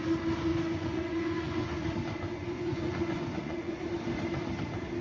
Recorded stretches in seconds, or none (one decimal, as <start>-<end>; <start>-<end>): 0.0-0.5; 1.9-2.3; 3.8-5.0

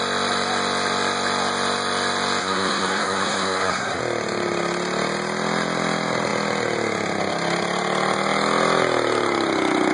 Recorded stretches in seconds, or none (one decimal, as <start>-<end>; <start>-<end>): 0.0-2.4; 4.0-9.9

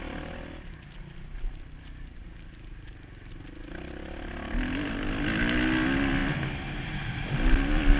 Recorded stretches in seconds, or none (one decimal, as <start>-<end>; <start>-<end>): 0.0-8.0